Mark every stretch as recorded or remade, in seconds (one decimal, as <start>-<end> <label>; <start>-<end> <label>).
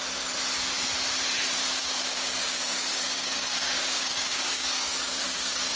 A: 0.0-1.8 recorded; 1.8-5.8 remade